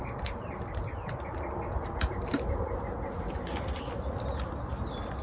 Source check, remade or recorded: recorded